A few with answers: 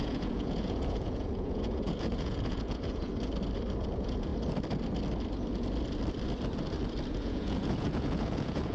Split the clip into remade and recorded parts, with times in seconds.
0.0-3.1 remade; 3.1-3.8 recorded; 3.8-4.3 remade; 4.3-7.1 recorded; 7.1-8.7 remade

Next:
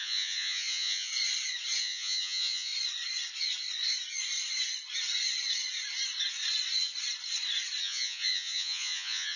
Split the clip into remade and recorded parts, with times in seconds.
0.0-1.1 remade; 1.1-1.8 recorded; 1.8-2.7 remade; 2.7-7.8 recorded; 7.8-9.4 remade

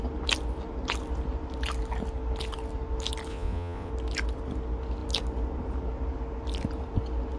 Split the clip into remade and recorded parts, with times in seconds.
0.0-3.3 recorded; 3.3-3.9 remade; 3.9-7.4 recorded

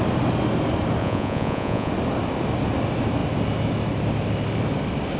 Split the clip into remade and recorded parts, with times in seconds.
0.0-1.0 recorded; 1.0-1.9 remade; 1.9-5.2 recorded

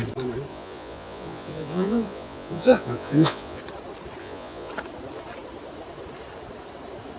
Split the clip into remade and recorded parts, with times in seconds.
0.0-0.5 recorded; 0.5-3.6 remade; 3.6-4.2 recorded; 4.2-4.7 remade; 4.7-7.2 recorded